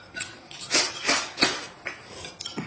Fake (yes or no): no